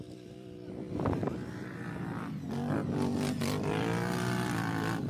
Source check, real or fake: fake